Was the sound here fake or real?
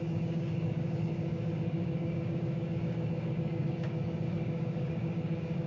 fake